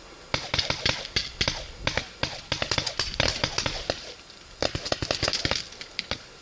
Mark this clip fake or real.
real